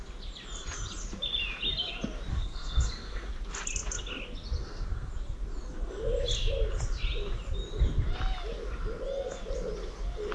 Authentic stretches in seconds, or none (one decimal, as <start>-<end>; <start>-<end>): 0.0-2.3; 3.3-4.6; 5.1-10.3